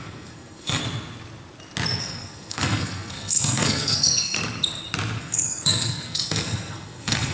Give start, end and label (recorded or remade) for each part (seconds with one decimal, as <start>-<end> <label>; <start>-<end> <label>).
0.0-0.8 remade; 0.8-2.0 recorded; 2.0-4.4 remade; 4.4-5.2 recorded; 5.2-7.3 remade